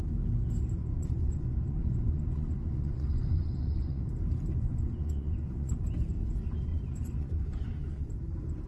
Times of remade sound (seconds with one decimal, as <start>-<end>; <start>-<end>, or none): 0.8-4.0; 4.5-5.8; 6.7-8.1